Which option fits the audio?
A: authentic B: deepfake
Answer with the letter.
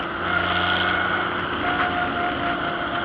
A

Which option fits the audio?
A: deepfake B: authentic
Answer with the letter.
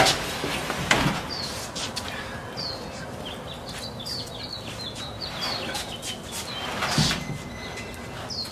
B